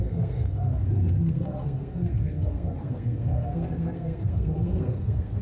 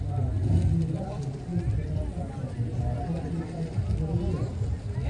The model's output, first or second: first